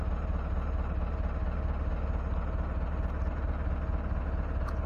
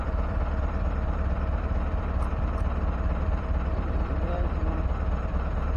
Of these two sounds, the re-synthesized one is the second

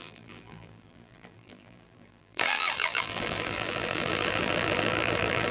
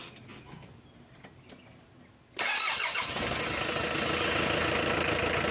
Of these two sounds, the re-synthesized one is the first